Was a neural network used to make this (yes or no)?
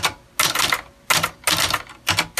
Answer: no